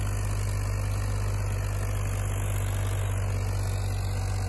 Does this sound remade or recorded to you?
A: recorded